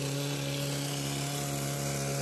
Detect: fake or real real